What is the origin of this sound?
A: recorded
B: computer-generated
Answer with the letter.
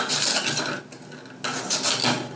A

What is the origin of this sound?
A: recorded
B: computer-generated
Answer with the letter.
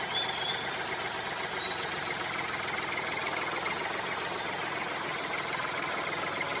A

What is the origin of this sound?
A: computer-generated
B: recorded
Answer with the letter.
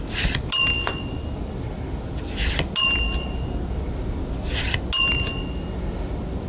B